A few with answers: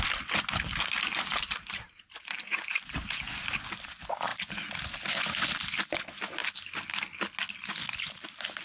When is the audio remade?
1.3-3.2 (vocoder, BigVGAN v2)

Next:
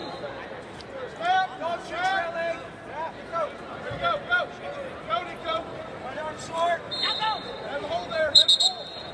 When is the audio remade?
5.4-8.4 (vocoder, BigVGAN v2)

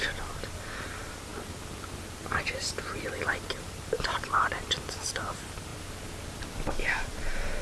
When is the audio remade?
0.0-1.3 (vocoder, BigVGAN v2); 3.3-5.7; 6.7-7.6